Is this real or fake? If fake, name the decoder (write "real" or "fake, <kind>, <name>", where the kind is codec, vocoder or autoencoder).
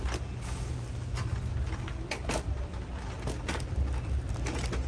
real